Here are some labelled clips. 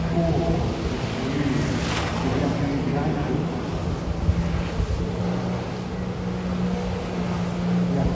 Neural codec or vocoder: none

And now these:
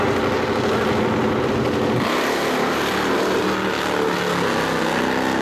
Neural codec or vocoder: none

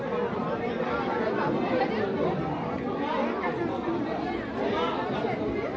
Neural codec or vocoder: none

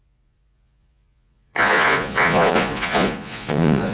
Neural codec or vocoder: vocoder, Vocos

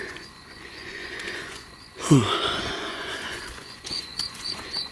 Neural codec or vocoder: vocoder, Vocos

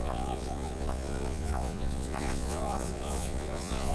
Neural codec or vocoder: vocoder, Vocos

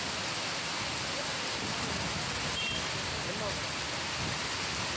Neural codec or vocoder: none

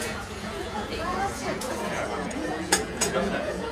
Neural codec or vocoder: vocoder, Vocos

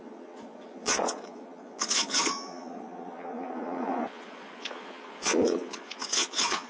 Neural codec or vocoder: vocoder, Vocos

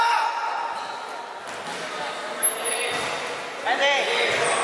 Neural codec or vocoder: none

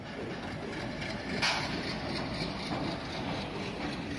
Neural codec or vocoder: none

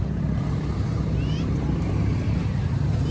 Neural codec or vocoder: none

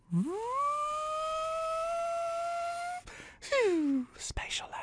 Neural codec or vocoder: none